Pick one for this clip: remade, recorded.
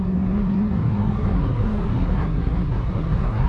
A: remade